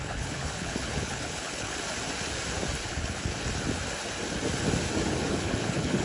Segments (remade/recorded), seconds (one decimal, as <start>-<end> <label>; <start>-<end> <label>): 0.0-1.7 remade; 1.7-2.9 recorded; 2.9-3.3 remade; 3.3-5.3 recorded; 5.3-6.0 remade